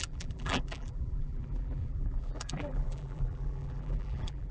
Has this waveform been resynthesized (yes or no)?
yes